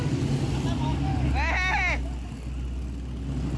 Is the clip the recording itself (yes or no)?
yes